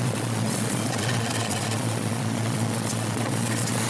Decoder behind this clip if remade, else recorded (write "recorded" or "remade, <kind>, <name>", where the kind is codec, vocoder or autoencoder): remade, vocoder, Vocos